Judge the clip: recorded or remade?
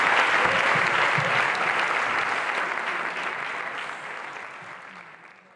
recorded